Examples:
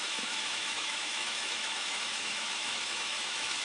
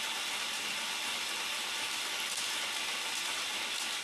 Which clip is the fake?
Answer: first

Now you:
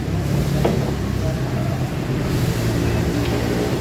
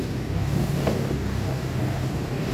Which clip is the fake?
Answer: second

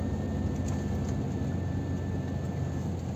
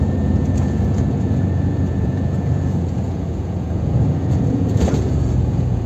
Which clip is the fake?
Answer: second